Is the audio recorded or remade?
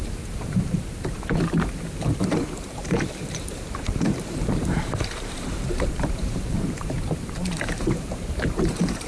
remade